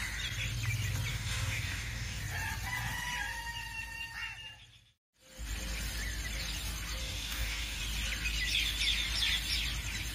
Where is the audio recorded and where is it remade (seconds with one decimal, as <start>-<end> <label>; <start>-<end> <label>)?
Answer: 0.0-1.1 recorded; 1.1-2.2 remade; 2.2-7.0 recorded; 7.0-7.8 remade; 7.8-10.1 recorded